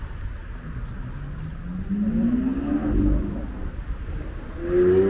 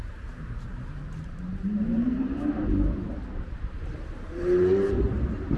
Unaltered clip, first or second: first